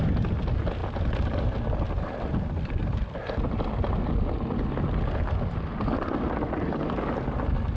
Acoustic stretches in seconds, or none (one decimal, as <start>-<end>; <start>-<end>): 0.0-7.8